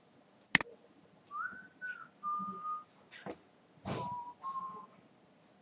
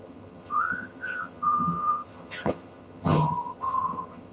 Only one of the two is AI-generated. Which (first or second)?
second